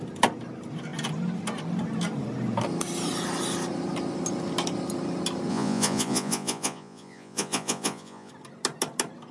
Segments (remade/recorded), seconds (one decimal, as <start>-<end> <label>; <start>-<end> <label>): 0.0-5.5 recorded; 5.5-8.3 remade; 8.3-9.3 recorded